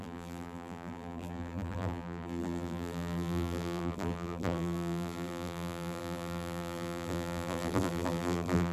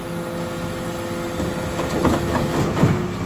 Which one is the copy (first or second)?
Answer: first